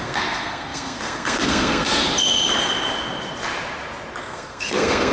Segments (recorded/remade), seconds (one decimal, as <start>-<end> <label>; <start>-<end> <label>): 0.0-2.0 remade; 2.0-4.2 recorded; 4.2-5.1 remade